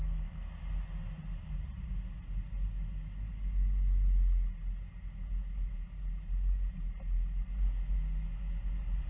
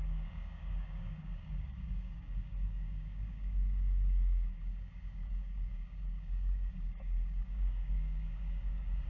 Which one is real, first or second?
first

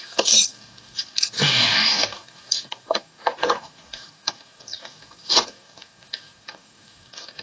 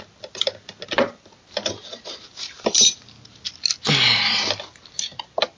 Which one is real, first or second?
second